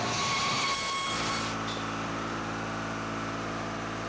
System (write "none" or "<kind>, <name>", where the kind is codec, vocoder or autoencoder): none